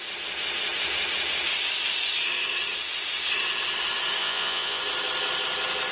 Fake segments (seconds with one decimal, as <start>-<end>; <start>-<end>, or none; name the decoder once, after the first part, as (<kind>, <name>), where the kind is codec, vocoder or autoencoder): 4.2-4.8 (vocoder, Vocos)